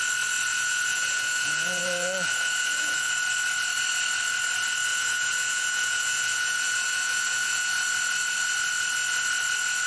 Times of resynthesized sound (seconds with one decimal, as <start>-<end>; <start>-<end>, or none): 0.5-3.1; 4.9-7.7